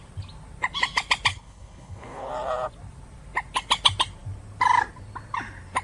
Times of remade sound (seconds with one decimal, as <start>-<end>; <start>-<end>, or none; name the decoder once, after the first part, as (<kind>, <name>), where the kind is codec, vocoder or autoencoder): 1.3-2.3 (codec, HILCodec)